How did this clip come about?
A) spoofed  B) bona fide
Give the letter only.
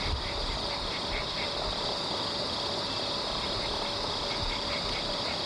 B